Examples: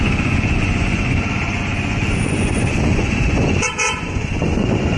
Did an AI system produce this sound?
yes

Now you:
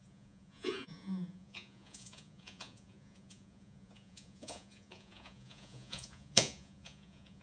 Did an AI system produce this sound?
yes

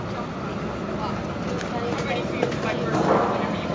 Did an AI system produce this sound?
no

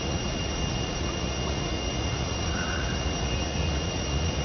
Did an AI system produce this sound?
yes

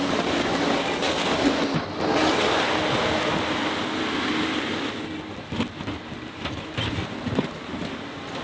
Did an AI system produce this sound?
no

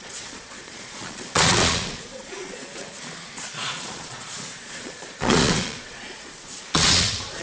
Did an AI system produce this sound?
yes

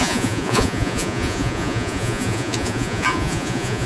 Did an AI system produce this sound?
yes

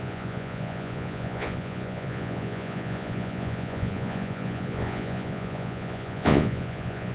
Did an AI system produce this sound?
yes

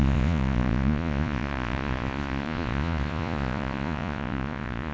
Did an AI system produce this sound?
yes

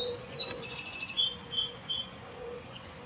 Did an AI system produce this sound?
yes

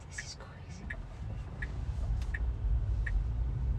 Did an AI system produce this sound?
no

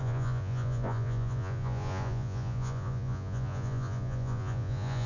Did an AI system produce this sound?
yes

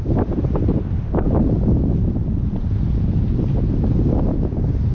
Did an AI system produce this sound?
no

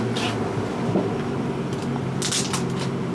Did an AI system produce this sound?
no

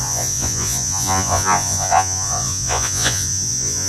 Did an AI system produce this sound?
yes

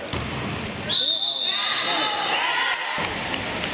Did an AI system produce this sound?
no